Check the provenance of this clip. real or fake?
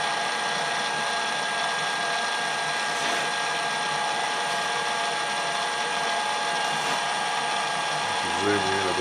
real